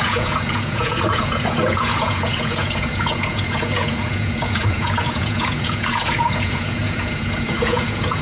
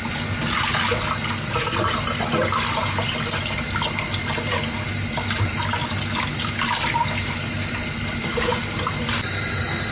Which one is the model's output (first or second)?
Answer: first